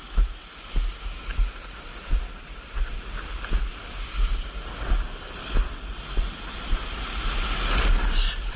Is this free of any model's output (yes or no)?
yes